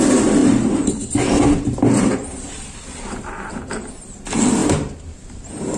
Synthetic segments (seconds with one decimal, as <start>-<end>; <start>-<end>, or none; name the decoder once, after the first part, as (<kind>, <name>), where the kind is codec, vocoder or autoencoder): 0.4-3.9 (vocoder, BigVGAN v2); 4.6-5.8